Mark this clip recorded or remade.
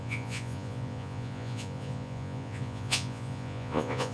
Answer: remade